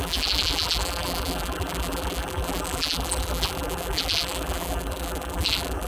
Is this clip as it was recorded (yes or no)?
no